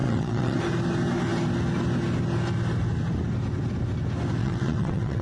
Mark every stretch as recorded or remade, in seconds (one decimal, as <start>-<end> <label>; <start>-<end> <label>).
0.0-0.6 remade; 0.6-4.4 recorded; 4.4-5.2 remade